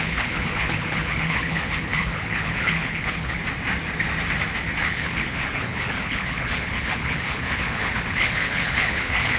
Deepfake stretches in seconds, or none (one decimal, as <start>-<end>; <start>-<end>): 0.0-3.4; 4.8-9.4